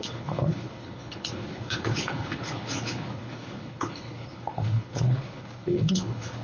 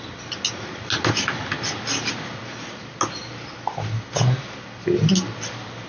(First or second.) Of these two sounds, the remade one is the first